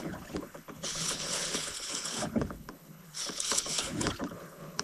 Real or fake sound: fake